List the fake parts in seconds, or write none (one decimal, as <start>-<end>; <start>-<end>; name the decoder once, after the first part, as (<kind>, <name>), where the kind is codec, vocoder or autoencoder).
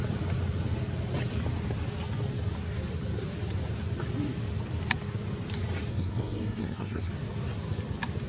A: 5.9-7.1 (codec, SNAC)